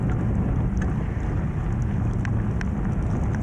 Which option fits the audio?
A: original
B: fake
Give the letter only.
A